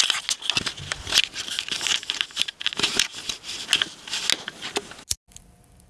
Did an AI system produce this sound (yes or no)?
no